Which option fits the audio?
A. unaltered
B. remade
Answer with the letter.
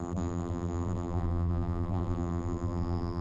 B